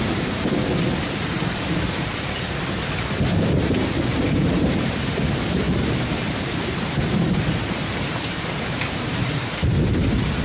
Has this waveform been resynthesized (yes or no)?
yes